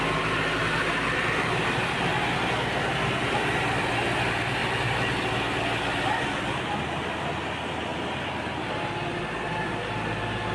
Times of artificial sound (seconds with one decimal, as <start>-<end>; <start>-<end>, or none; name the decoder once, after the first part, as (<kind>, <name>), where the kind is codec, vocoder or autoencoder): none